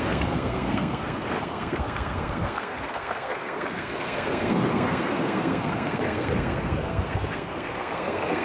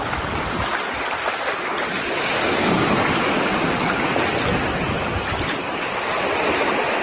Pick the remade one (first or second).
first